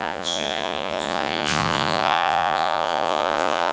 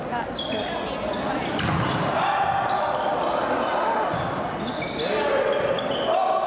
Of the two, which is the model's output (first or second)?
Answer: first